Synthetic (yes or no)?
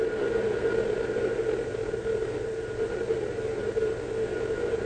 no